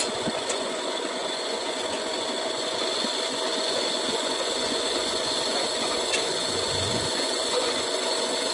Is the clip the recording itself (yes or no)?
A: no